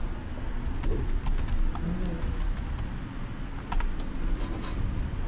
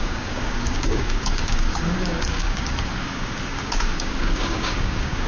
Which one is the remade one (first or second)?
second